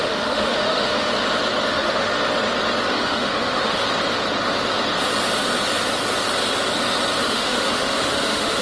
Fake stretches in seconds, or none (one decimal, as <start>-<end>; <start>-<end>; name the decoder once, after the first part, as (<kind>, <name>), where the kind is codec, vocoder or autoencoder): 0.0-1.1 (autoencoder, DAC-VAE); 1.7-2.1; 2.9-3.8; 7.2-8.6